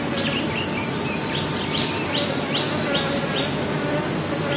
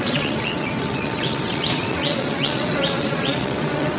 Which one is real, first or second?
first